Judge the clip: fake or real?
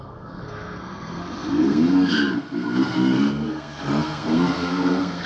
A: fake